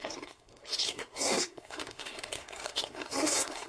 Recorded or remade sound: remade